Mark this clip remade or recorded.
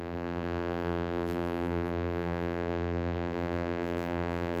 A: remade